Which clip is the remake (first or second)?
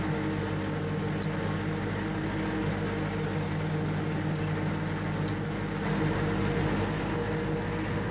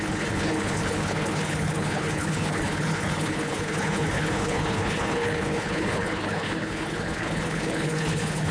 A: second